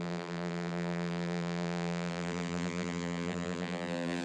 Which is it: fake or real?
fake